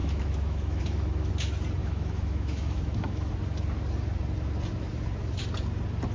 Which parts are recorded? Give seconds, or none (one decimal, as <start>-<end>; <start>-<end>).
1.3-1.8; 3.3-6.1